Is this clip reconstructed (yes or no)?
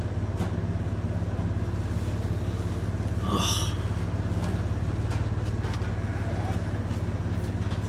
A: no